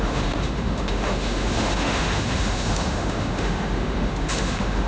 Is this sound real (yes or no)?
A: no